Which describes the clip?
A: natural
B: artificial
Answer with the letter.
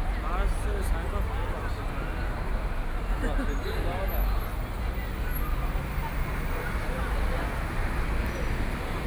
A